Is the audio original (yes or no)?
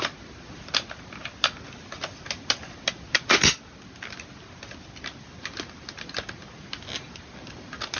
yes